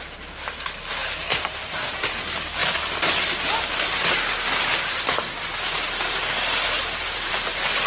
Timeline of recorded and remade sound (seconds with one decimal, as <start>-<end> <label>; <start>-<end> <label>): 0.0-1.0 recorded; 1.0-2.2 remade; 2.2-7.9 recorded